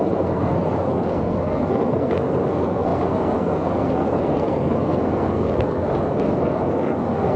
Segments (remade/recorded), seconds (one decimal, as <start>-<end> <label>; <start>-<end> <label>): 0.0-7.4 remade